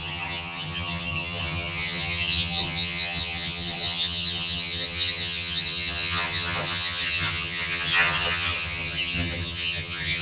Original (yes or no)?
no